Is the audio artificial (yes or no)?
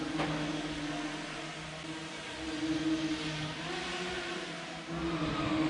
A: no